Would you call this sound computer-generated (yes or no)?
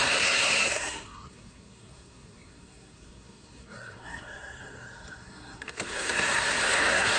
yes